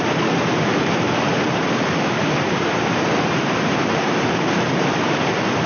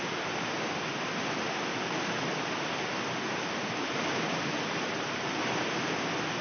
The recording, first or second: second